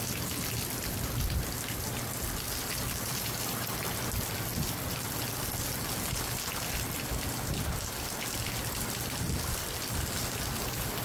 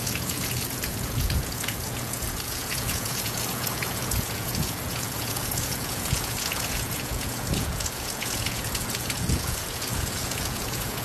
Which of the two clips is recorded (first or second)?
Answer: first